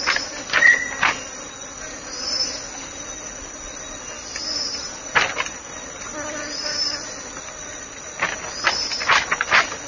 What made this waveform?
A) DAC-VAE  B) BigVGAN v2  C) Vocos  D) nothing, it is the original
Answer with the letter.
D